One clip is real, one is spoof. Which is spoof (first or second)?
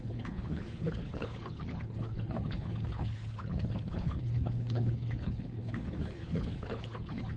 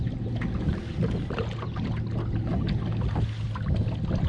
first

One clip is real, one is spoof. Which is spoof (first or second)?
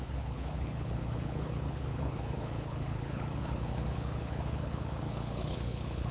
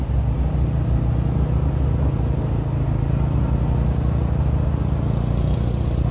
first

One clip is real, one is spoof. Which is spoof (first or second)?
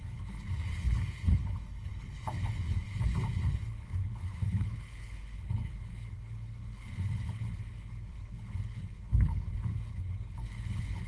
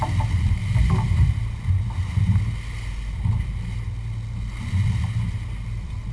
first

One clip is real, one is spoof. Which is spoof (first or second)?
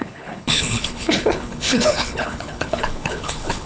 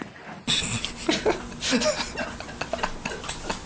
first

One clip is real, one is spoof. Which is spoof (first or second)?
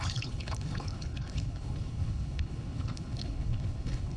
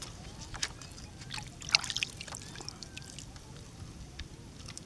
first